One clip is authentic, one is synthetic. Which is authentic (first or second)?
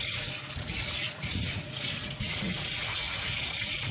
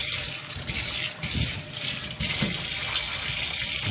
second